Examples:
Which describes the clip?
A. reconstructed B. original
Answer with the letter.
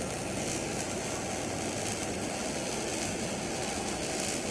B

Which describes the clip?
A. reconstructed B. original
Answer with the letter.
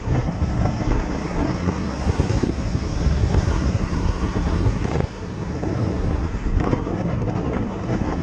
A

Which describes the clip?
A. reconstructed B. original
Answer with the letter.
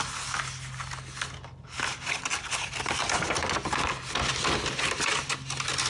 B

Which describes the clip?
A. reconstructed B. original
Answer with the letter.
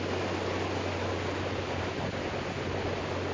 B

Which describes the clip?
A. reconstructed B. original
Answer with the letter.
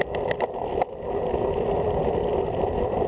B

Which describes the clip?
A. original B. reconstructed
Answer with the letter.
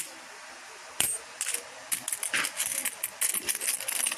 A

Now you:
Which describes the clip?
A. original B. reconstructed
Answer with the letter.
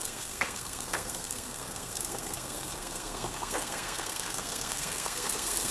B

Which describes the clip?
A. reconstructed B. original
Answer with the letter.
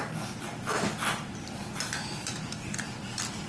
B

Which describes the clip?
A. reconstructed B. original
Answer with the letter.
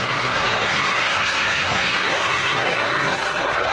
A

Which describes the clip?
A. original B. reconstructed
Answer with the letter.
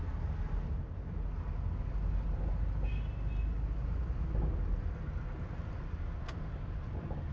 A